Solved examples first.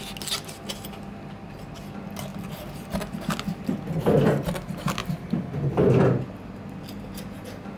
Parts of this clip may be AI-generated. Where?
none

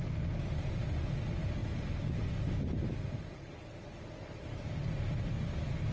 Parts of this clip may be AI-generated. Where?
none

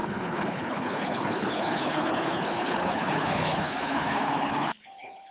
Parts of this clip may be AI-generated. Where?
0.0-5.3 (codec, HILCodec)

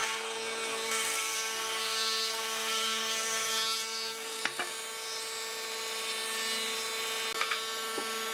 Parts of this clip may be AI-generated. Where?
0.0-4.4 (codec, SNAC)

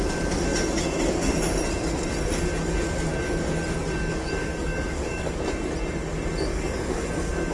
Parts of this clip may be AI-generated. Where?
4.4-5.4 (codec, DAC); 6.5-7.1